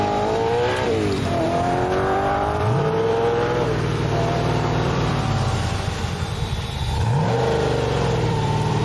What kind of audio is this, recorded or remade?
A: remade